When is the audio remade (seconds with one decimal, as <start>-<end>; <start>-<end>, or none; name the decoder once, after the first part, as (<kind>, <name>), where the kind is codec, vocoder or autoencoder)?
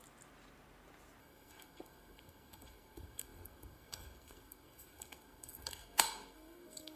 1.2-7.0 (codec, SNAC)